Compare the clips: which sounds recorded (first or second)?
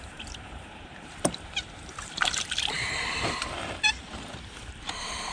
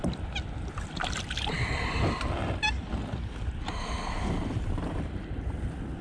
second